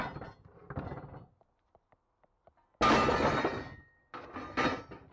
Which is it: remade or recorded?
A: recorded